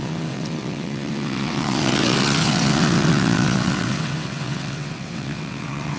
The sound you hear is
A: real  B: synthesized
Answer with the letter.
B